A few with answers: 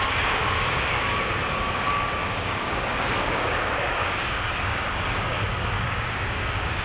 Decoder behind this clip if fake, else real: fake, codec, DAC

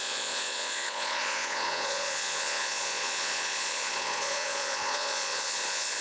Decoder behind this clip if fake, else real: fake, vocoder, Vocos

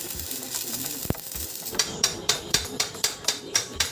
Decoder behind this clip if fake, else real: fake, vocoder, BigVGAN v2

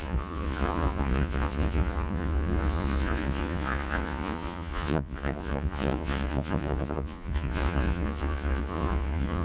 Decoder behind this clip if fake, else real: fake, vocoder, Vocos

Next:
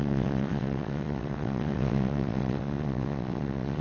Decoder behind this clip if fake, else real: fake, vocoder, WaveNeXt